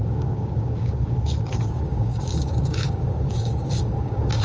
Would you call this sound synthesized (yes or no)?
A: yes